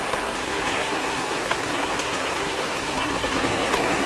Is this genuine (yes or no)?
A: no